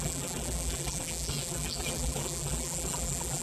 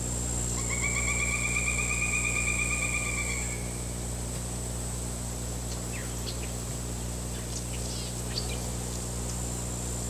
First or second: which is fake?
first